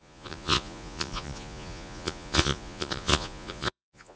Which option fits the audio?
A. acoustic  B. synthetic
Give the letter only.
B